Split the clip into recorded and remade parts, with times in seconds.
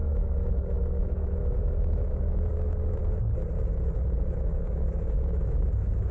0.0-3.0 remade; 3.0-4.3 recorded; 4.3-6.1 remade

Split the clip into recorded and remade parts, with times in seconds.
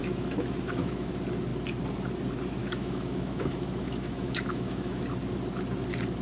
0.0-1.1 remade; 1.1-2.6 recorded; 2.6-5.0 remade; 5.0-6.2 recorded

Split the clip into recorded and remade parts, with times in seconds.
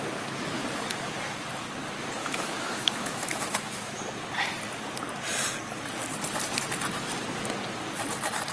0.0-2.2 recorded; 2.2-4.0 remade; 4.0-8.5 recorded